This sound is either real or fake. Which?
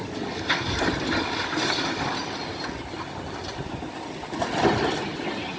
real